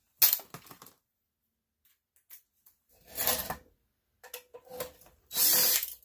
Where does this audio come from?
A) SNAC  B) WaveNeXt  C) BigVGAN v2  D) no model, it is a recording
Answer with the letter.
D